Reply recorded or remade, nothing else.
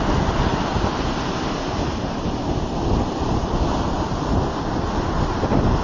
recorded